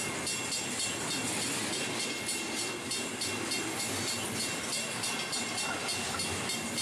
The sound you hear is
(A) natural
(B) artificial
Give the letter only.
A